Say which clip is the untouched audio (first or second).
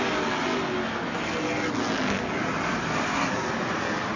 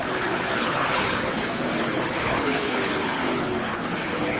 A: first